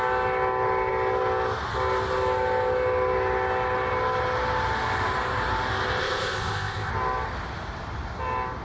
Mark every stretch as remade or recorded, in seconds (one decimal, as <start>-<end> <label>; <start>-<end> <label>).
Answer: 0.0-6.0 recorded; 6.0-6.9 remade; 6.9-8.6 recorded